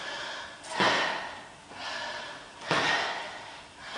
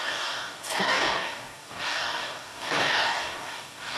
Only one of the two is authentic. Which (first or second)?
first